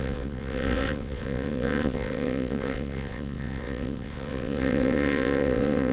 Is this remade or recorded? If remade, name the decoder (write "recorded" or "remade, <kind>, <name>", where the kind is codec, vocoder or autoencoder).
remade, vocoder, WaveNeXt